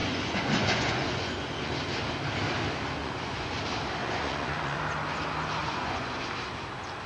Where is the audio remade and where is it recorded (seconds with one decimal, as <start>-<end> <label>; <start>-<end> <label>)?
0.0-1.7 remade; 1.7-3.0 recorded; 3.0-3.6 remade; 3.6-4.0 recorded; 4.0-4.8 remade; 4.8-5.6 recorded; 5.6-6.2 remade; 6.2-7.1 recorded